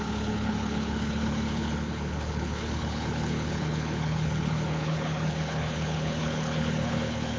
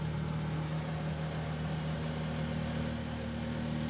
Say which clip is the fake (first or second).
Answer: first